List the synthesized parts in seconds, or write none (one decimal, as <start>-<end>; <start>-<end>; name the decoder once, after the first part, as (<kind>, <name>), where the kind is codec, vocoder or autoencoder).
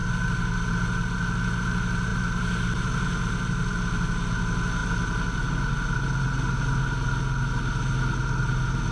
none